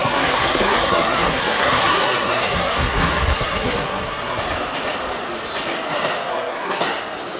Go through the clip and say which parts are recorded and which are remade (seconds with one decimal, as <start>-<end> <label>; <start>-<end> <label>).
0.0-4.4 remade; 4.4-6.3 recorded; 6.3-6.8 remade; 6.8-7.4 recorded